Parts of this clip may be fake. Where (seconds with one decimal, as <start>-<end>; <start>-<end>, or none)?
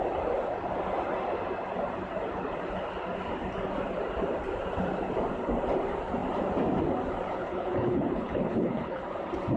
7.4-9.0